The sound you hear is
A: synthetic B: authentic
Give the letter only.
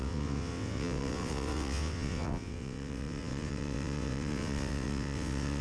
A